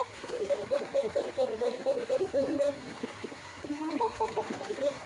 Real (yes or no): no